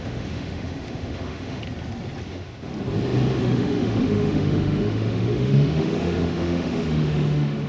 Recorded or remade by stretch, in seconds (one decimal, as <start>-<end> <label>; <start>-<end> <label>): 0.0-1.6 remade; 1.6-2.3 recorded; 2.3-2.7 remade; 2.7-3.4 recorded; 3.4-7.7 remade

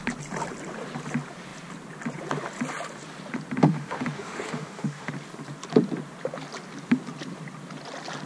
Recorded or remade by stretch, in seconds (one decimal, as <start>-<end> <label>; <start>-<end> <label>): 0.0-3.6 recorded; 3.6-5.1 remade; 5.1-8.3 recorded